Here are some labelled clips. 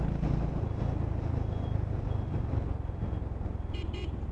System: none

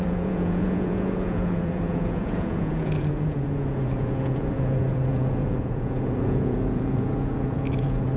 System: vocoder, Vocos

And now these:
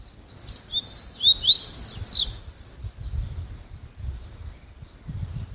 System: none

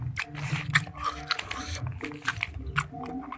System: none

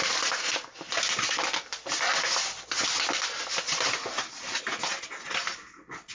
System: none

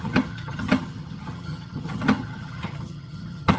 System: vocoder, HiFi-GAN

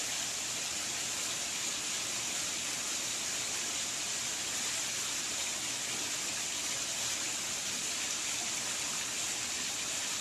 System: none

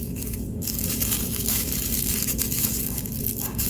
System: codec, DAC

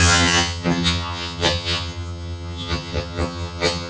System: vocoder, HiFi-GAN